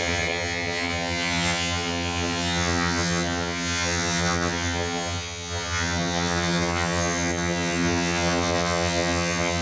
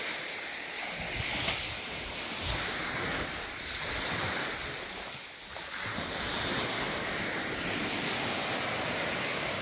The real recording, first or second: second